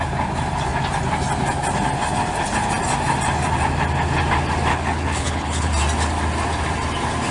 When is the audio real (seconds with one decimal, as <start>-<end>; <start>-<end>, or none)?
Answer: 0.0-4.7; 5.7-7.3

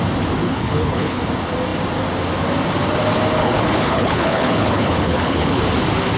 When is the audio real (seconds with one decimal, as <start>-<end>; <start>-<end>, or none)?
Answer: 0.0-0.4; 1.2-3.4; 5.6-6.2